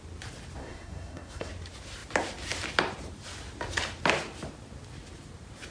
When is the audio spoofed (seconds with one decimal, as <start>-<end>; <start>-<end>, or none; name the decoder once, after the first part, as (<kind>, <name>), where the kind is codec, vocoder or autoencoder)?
0.6-1.5 (codec, SNAC)